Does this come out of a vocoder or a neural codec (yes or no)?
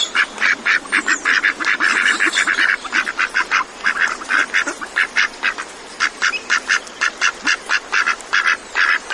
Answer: no